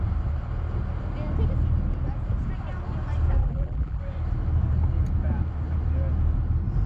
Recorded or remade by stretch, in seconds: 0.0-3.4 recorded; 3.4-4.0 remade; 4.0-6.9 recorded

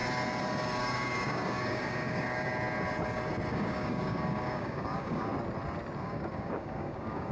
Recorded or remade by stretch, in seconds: 0.0-0.8 recorded; 0.8-2.5 remade; 2.5-3.5 recorded; 3.5-5.3 remade; 5.3-6.0 recorded; 6.0-7.3 remade